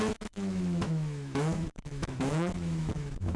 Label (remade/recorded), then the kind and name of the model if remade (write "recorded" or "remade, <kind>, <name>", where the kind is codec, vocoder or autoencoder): remade, autoencoder, DAC-VAE